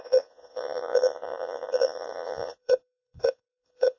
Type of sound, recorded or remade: remade